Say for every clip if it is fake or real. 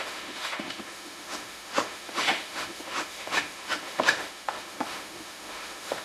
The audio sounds fake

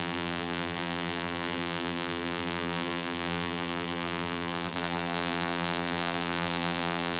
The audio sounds fake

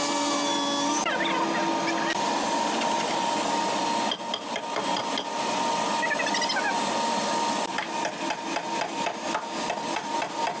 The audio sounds real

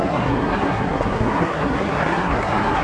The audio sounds fake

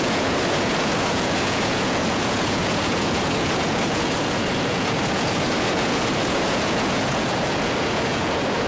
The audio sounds fake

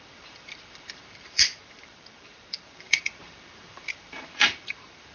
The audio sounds fake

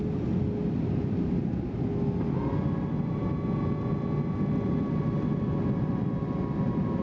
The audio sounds real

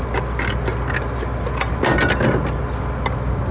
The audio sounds real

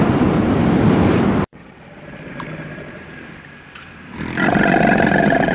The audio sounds real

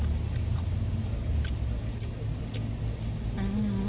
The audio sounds real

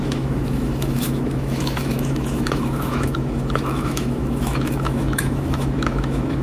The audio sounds fake